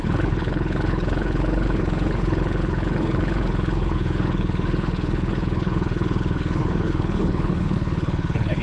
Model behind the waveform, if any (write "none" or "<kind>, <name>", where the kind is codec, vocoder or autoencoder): codec, HILCodec